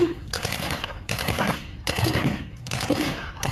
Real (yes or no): no